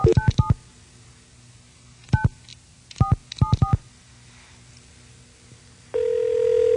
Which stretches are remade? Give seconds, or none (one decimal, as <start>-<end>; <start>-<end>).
none